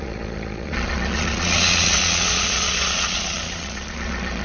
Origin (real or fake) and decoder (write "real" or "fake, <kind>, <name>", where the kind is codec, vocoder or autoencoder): fake, vocoder, Vocos